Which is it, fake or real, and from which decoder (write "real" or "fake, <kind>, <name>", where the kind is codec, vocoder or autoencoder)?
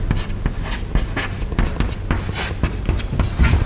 real